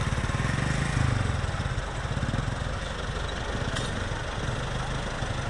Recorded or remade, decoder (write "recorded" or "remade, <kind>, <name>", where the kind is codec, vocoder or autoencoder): recorded